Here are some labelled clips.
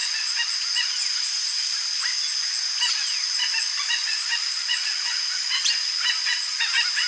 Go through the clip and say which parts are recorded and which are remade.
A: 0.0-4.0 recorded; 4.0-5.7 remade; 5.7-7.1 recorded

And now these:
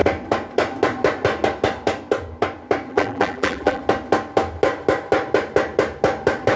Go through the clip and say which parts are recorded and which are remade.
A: 0.0-2.9 recorded; 2.9-3.8 remade; 3.8-6.6 recorded